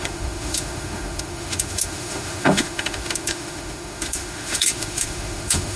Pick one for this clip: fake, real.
fake